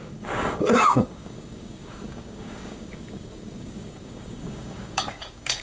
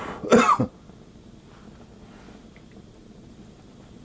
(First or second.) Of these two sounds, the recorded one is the second